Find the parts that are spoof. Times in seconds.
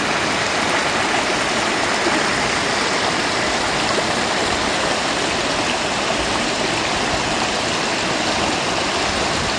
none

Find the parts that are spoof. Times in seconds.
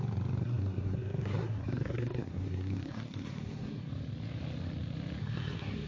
0.4-3.9 (codec, SNAC); 5.2-5.9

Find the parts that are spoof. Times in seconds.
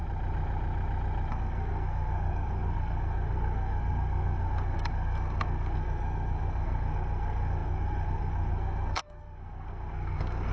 1.3-10.5 (codec, SNAC)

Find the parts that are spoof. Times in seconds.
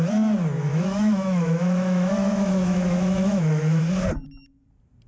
0.7-3.8 (autoencoder, DAC-VAE)